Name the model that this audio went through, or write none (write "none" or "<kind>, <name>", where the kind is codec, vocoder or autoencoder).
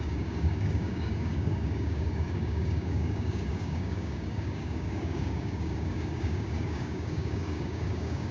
codec, DAC